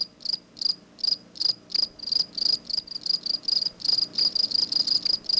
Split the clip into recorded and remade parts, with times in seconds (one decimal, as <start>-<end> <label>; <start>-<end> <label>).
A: 0.0-5.4 recorded